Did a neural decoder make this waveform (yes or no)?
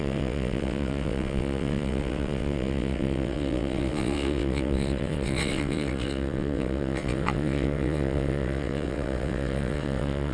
yes